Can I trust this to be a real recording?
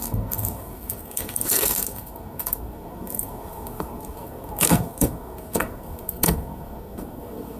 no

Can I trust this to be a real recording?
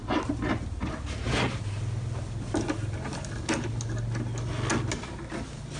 yes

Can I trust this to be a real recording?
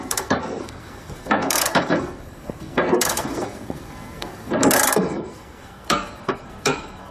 no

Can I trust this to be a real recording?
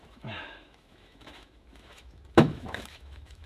no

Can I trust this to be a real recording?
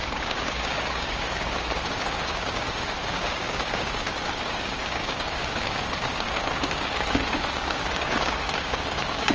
no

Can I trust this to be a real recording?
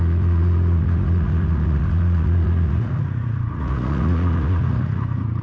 no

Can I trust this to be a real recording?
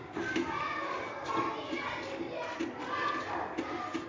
yes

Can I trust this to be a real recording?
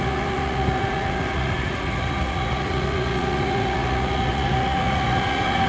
no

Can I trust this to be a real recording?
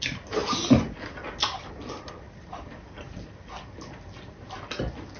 yes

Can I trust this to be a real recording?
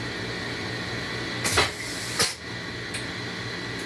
yes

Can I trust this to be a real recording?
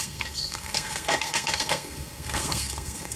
no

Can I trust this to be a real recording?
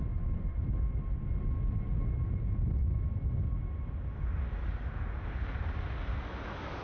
yes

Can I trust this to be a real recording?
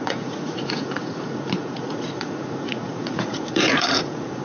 no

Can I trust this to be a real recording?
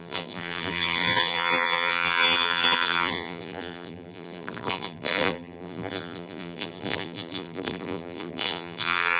no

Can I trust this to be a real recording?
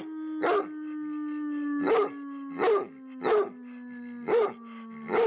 yes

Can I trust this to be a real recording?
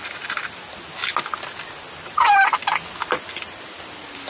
yes